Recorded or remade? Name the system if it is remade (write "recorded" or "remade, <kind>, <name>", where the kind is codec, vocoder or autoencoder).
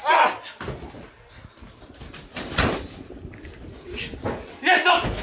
recorded